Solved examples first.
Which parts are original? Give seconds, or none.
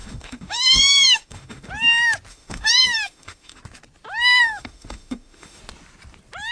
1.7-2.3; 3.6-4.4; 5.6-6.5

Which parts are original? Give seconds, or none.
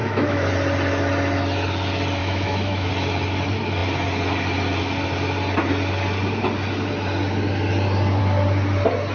0.5-2.2; 2.9-9.1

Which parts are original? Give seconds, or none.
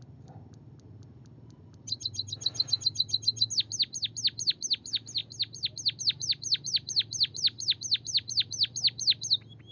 0.0-9.7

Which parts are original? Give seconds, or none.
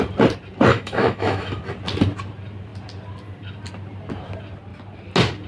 0.0-0.7; 1.6-5.5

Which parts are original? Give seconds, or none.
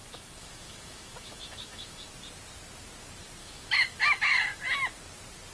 2.1-3.4; 4.6-5.5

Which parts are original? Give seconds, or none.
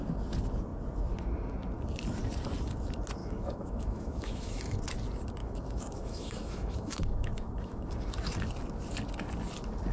0.0-3.2; 4.8-5.4; 7.9-9.9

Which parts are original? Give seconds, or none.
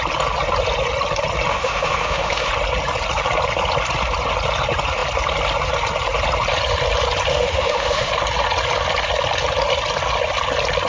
0.0-1.5; 2.5-7.3; 8.1-10.9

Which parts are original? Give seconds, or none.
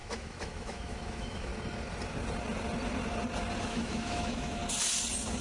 1.5-3.6; 4.6-5.4